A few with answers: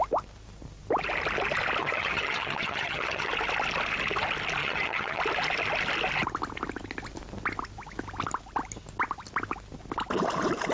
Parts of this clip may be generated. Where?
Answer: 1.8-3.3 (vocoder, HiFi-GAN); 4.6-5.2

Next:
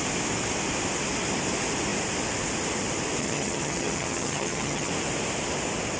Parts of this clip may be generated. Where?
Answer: 3.2-4.9 (vocoder, HiFi-GAN)

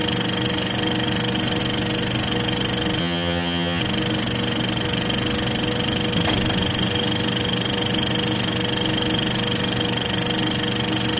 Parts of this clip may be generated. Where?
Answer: 3.0-3.8 (vocoder, HiFi-GAN)

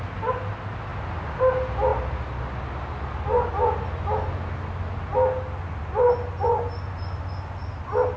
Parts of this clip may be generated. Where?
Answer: none

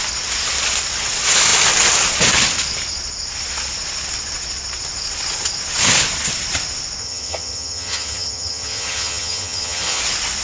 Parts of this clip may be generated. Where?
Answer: 7.0-10.0 (vocoder, HiFi-GAN)